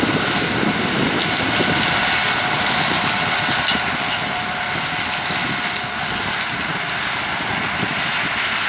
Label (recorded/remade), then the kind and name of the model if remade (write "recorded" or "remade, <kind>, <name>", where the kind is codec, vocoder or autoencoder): recorded